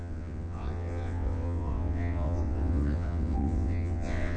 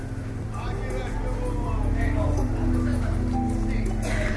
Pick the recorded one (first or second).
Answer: second